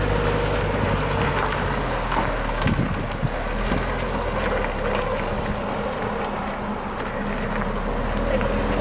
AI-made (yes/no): no